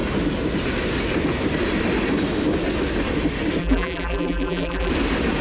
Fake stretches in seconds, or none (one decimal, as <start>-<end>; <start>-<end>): 3.6-4.9